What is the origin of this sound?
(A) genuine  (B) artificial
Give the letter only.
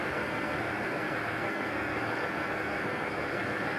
B